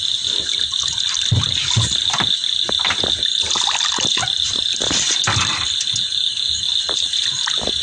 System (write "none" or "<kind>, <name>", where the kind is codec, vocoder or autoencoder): none